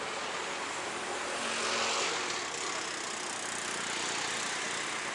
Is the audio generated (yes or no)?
no